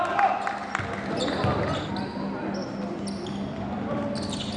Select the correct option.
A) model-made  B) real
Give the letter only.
B